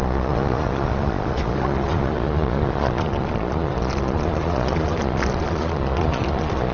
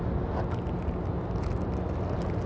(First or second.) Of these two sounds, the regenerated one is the first